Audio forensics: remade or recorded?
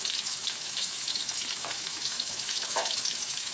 remade